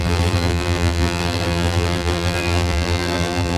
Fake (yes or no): yes